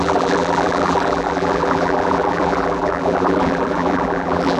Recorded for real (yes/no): no